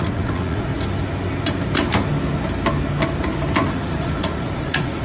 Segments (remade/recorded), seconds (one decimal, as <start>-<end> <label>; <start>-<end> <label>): 0.0-0.7 remade; 0.7-3.7 recorded; 3.7-5.0 remade